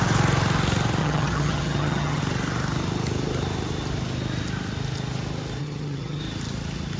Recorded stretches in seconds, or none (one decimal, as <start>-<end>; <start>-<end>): 0.0-1.0; 2.2-5.6; 6.2-7.0